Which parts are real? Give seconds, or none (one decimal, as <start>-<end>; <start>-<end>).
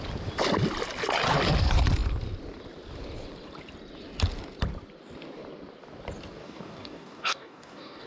0.0-6.4